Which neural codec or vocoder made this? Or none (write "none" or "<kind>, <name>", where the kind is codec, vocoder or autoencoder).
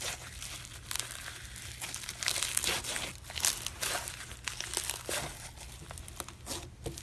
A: none